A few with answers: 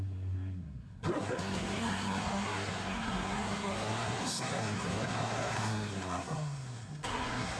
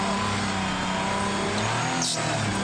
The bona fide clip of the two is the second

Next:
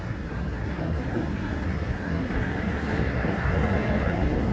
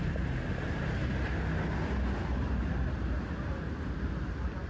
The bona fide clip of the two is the second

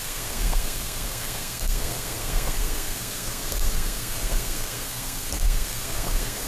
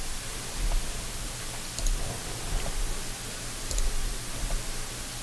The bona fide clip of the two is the second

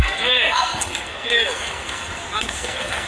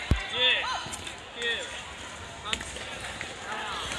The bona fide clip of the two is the second